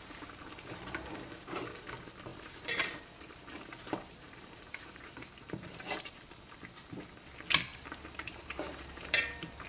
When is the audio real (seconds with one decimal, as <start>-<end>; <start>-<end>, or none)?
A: 0.0-2.3; 6.0-7.7

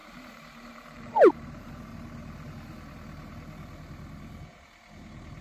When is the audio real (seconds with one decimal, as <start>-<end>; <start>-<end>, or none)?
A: 1.9-5.4

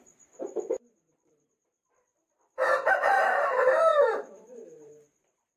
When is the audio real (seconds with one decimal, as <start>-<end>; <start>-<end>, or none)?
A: 1.7-2.9; 3.9-4.5

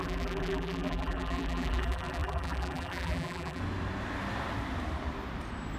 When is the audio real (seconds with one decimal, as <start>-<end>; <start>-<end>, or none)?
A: 3.6-5.8

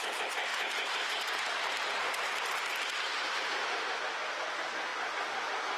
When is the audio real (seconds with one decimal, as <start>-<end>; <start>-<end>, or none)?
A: 0.0-0.5; 4.0-5.8

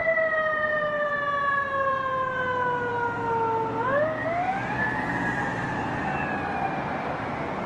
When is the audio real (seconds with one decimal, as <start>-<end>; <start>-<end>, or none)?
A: 2.1-7.7